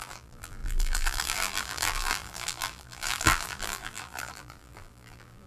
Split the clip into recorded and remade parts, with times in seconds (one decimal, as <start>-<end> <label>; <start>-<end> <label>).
0.0-5.5 remade